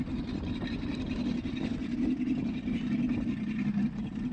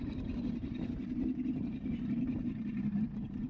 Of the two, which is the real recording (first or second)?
first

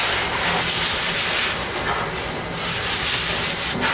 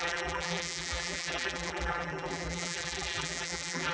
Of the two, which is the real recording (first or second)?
first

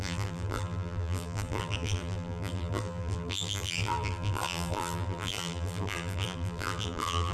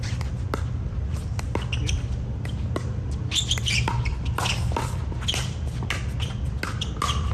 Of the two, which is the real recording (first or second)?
second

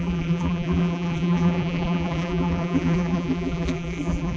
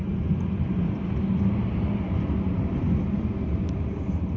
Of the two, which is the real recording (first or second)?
second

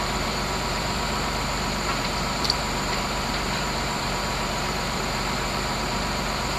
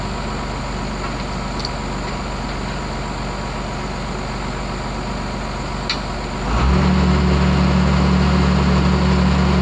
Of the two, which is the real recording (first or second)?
second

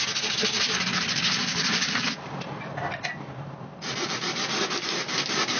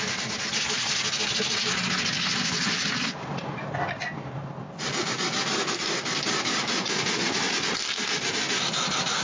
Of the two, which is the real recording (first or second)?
second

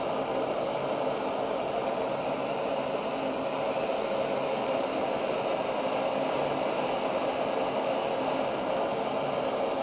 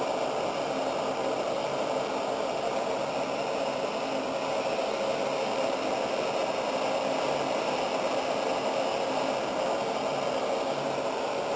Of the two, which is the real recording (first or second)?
second